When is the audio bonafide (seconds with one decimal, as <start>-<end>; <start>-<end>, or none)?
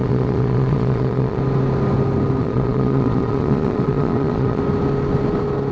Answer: 1.4-2.4; 4.6-5.7